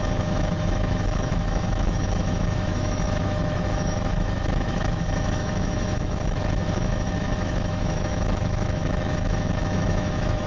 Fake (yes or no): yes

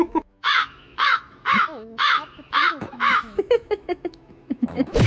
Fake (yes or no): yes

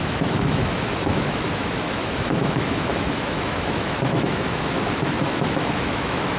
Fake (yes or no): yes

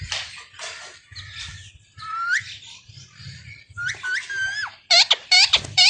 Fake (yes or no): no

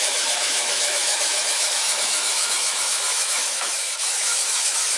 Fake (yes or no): yes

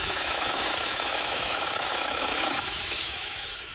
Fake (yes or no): yes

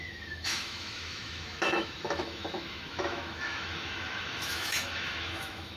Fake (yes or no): yes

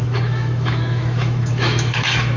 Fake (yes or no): yes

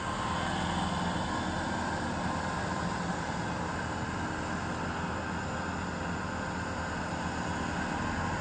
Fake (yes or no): no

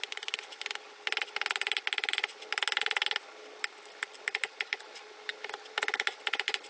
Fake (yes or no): no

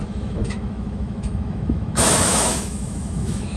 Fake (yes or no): yes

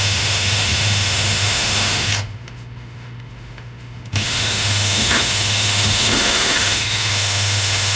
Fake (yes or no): yes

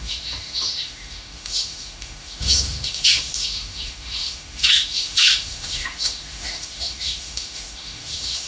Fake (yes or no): yes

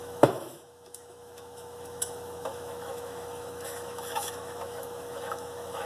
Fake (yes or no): yes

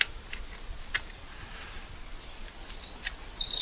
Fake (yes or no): no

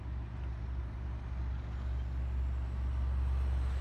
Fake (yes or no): no